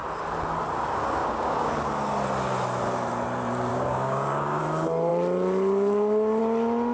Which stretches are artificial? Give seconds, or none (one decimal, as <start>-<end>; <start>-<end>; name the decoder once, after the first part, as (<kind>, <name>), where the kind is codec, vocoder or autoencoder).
1.2-1.7 (codec, DAC); 3.7-4.6